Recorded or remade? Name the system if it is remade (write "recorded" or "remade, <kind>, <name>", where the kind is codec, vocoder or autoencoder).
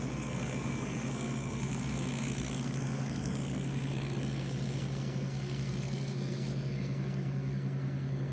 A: remade, codec, SNAC